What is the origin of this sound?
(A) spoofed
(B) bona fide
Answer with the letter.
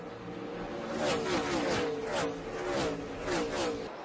B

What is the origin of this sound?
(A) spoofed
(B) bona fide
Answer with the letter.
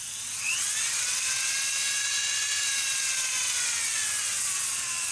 A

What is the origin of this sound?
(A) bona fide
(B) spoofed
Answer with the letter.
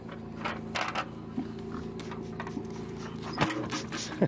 A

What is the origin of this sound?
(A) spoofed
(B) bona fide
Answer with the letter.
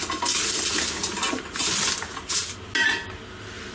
B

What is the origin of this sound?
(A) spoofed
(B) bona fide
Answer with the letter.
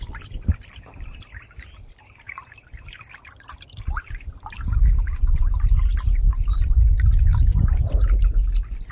B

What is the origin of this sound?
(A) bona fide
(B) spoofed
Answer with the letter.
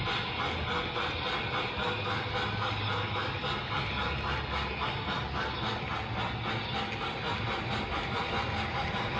A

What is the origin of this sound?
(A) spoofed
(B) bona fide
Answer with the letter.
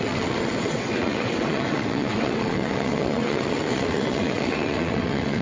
A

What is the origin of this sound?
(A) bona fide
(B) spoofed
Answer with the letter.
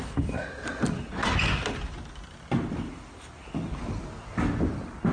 A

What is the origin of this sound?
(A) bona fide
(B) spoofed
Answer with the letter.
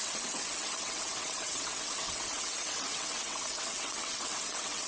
B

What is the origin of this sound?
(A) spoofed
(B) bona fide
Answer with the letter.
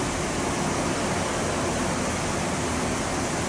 B